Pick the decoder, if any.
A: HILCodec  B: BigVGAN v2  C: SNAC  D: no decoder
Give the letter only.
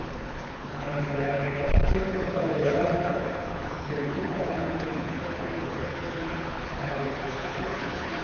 A